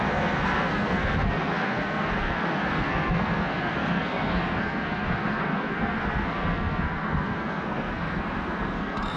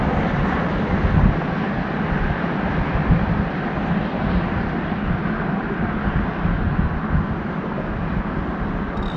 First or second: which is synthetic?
first